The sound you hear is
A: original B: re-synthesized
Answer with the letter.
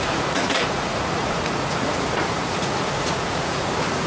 B